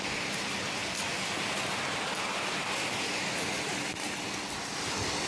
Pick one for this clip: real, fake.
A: real